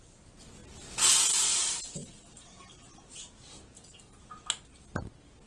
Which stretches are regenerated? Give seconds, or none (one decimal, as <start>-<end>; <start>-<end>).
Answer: none

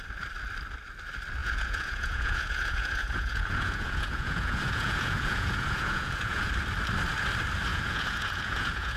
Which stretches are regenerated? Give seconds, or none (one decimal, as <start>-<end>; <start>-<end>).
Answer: 1.4-6.5; 7.7-9.0

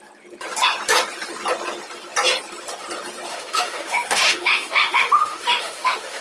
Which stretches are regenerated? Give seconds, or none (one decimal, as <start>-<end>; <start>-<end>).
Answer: 3.3-6.2

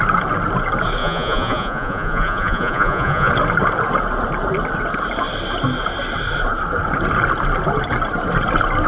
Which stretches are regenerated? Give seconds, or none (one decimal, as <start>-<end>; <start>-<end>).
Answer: 1.0-3.3